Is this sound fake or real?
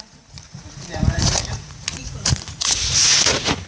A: fake